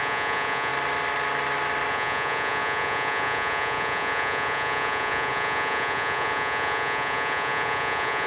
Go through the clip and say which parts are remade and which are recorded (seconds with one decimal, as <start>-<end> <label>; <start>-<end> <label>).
0.0-0.7 remade; 0.7-1.9 recorded; 1.9-8.3 remade